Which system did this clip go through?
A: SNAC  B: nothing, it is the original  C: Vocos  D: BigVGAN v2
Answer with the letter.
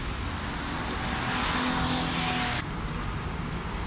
B